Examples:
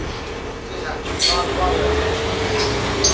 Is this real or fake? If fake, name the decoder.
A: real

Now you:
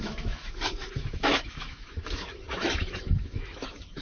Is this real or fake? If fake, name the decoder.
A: fake, autoencoder, DAC-VAE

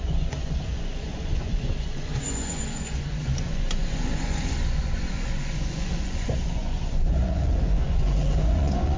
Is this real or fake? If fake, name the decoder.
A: fake, vocoder, Vocos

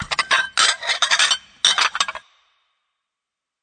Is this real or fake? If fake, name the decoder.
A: real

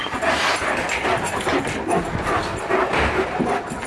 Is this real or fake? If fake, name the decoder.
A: real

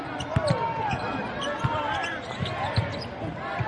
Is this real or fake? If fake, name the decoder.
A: real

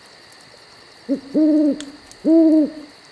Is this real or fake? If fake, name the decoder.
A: real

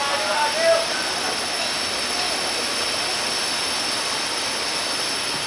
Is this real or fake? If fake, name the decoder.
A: real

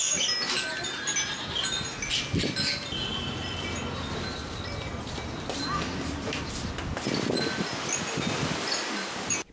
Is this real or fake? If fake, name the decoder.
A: real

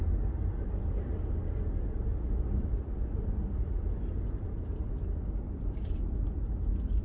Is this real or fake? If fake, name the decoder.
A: real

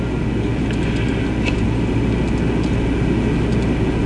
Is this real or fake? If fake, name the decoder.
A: real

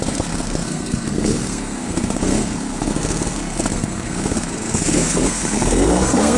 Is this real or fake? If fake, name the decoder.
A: fake, codec, SNAC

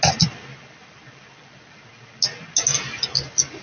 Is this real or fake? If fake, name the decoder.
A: real